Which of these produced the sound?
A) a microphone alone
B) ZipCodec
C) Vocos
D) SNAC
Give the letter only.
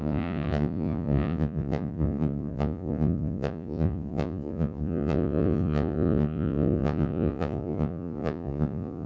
C